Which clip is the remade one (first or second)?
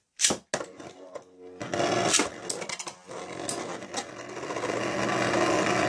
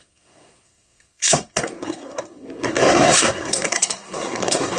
second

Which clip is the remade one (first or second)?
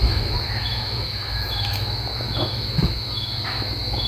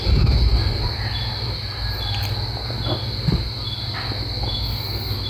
first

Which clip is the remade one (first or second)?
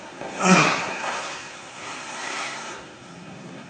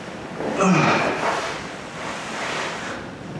first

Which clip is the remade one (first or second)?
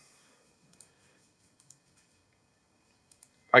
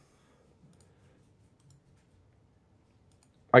first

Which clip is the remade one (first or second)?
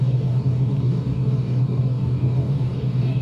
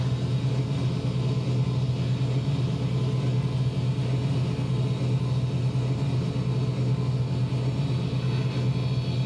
first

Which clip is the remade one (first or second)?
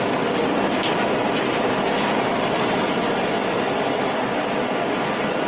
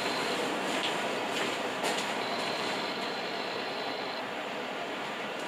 second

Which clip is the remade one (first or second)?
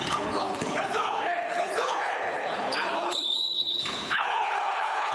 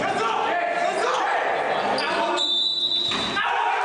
first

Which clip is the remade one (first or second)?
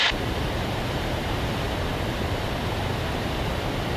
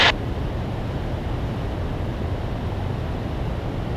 first